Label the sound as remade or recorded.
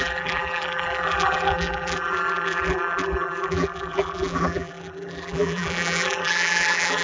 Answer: remade